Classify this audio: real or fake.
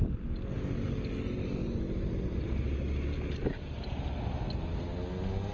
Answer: real